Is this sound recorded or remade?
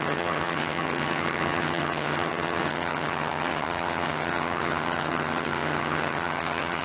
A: remade